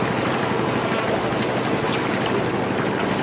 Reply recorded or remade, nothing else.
recorded